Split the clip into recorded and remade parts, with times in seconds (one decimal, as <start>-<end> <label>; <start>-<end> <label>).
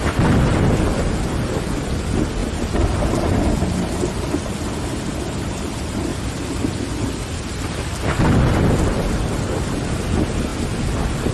0.0-11.3 recorded